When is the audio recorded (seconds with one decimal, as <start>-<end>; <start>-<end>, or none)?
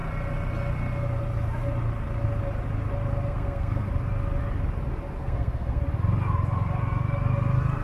0.0-3.3; 3.9-5.2; 5.8-7.8